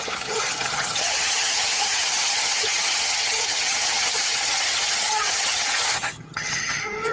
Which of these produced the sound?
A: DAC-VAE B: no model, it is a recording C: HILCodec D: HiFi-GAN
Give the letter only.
D